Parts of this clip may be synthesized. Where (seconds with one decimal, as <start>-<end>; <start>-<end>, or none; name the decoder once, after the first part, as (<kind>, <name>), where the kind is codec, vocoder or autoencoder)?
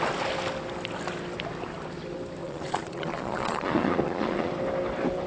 2.4-4.5 (vocoder, Vocos)